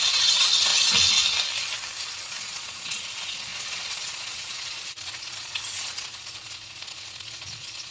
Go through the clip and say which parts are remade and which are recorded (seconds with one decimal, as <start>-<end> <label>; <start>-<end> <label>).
0.0-0.7 remade; 0.7-2.1 recorded; 2.1-7.9 remade